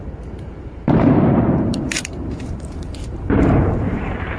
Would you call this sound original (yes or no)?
no